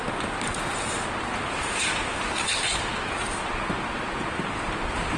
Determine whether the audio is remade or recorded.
recorded